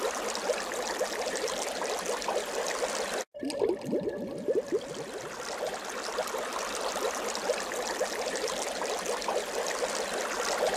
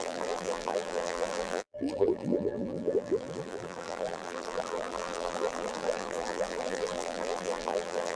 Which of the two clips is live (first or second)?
first